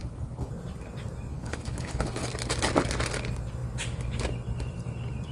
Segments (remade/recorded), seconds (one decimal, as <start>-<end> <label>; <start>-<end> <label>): 0.0-0.5 remade; 0.5-1.3 recorded; 1.3-2.3 remade; 2.3-5.3 recorded